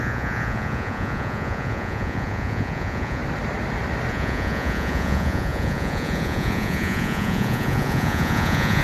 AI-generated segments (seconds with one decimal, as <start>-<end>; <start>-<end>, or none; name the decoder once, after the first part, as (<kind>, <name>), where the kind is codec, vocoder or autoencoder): 0.0-3.2 (vocoder, Vocos); 4.1-8.8